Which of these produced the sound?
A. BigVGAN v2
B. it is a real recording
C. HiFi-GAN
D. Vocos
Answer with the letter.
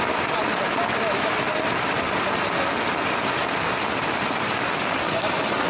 B